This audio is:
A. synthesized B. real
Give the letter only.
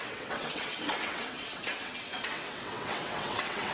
A